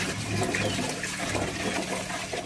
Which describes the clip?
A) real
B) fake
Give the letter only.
A